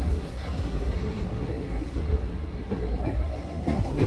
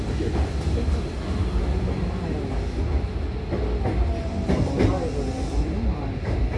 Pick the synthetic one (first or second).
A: first